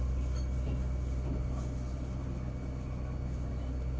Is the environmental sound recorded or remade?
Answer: recorded